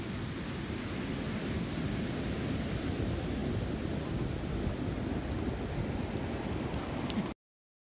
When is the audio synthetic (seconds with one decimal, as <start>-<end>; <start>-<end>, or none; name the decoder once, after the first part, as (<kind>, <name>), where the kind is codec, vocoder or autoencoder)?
none